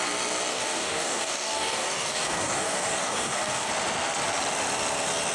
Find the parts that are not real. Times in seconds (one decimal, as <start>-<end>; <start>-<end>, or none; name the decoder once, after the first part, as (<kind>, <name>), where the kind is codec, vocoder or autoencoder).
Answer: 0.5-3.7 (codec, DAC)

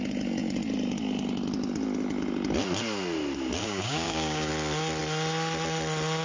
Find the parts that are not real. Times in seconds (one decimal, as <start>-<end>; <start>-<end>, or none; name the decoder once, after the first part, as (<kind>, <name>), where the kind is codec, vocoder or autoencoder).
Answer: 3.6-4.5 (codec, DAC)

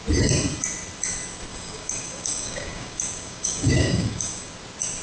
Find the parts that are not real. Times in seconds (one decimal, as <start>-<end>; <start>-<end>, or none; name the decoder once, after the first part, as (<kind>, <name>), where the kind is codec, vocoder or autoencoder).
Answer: 1.5-4.5 (codec, DAC)